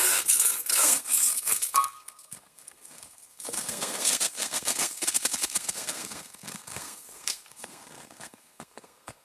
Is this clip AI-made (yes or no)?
yes